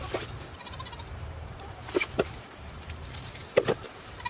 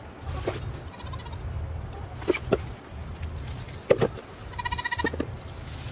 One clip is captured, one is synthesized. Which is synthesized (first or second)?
first